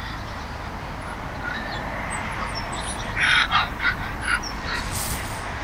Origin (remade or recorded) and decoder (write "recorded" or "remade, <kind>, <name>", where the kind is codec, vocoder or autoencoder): recorded